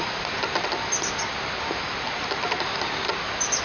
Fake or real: real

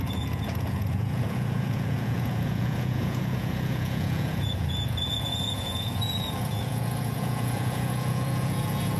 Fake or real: fake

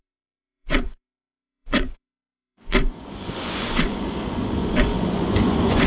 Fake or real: fake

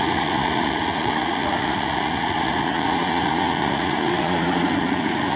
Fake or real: fake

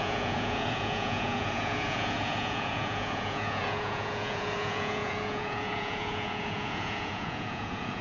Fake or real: fake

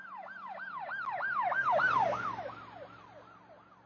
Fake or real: real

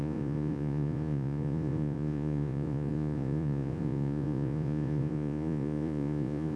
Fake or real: fake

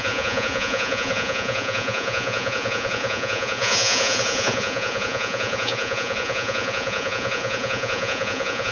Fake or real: fake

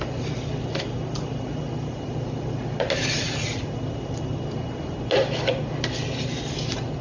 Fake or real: real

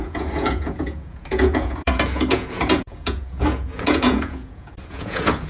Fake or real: fake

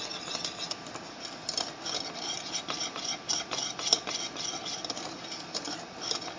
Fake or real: real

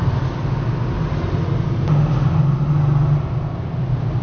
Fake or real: real